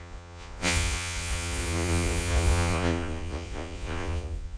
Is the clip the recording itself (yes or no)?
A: no